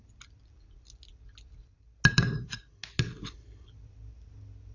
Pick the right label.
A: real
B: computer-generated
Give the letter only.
A